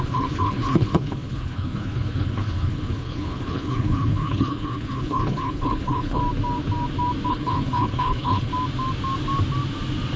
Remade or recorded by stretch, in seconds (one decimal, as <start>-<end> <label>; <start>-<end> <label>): 0.0-6.2 remade; 6.2-7.3 recorded; 7.3-8.5 remade; 8.5-10.2 recorded